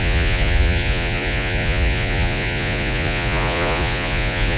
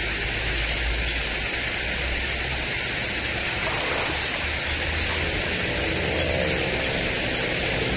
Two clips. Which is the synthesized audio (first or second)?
first